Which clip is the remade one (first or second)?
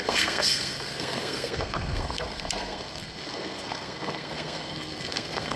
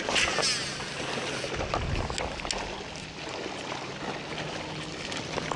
first